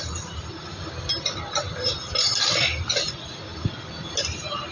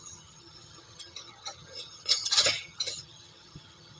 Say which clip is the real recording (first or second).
first